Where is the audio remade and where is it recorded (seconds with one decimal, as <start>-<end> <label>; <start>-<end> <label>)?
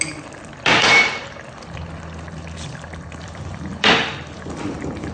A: 0.0-0.8 recorded; 0.8-3.9 remade; 3.9-5.1 recorded